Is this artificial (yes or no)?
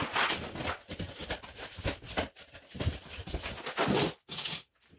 no